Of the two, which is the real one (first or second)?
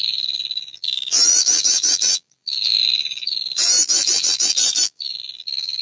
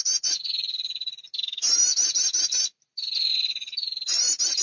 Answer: second